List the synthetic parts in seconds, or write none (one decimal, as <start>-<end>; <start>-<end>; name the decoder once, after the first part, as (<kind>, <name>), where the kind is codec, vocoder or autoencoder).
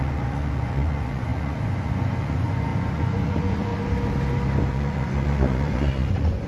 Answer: 0.0-3.7 (vocoder, Vocos); 4.7-6.5